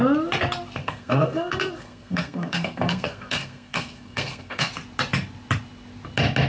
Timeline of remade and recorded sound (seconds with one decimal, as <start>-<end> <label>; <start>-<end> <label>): 0.0-0.8 recorded; 0.8-4.7 remade; 4.7-6.5 recorded